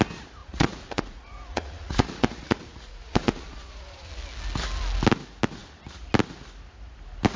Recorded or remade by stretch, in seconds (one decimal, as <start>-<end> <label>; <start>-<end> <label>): 0.0-0.4 recorded; 0.4-4.1 remade; 4.1-7.4 recorded